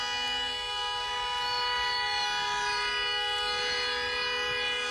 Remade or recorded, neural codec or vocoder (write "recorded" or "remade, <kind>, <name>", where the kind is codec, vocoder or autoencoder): recorded